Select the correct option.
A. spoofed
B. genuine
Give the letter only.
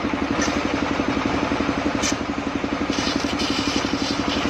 A